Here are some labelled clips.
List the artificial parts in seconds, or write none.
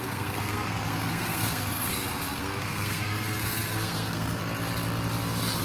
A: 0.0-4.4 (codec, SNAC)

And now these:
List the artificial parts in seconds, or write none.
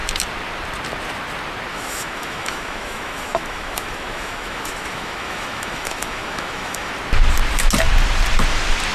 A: 1.7-6.9 (autoencoder, DAC-VAE)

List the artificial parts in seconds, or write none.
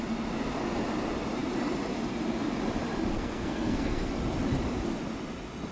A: 3.1-4.1 (codec, SNAC)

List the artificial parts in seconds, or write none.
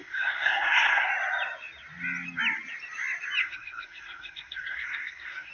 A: 0.0-1.1 (codec, SNAC); 3.4-5.5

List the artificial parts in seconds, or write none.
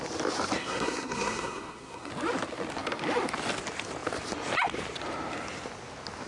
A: 0.6-2.1 (codec, SNAC)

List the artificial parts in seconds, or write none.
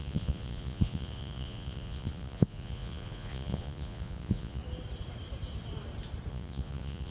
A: 0.0-4.6 (vocoder, Vocos); 6.3-7.1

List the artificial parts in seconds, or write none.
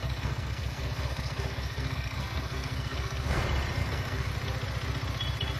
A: 0.0-3.4 (codec, SNAC); 3.8-4.3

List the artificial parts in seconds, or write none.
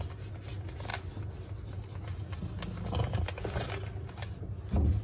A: none